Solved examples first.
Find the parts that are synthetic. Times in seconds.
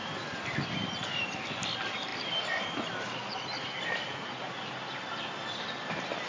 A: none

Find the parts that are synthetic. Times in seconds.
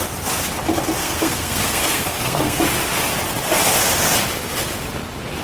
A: 1.0-2.6 (codec, SNAC)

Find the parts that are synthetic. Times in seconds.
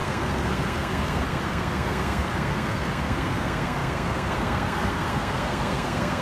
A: 0.0-6.2 (codec, SNAC)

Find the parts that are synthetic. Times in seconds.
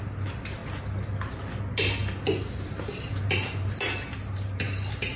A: none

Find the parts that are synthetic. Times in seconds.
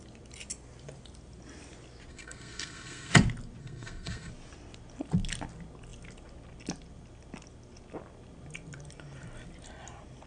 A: 2.1-3.1 (codec, SNAC); 3.6-4.3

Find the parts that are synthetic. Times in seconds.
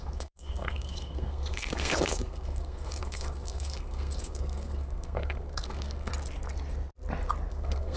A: 0.0-6.1 (codec, SNAC); 7.5-8.0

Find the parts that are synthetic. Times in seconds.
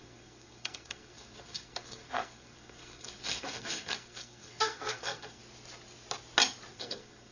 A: 0.0-5.4 (codec, SNAC); 6.7-7.3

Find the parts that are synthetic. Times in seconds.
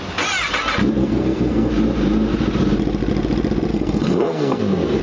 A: 1.0-1.7 (codec, SNAC); 3.7-4.6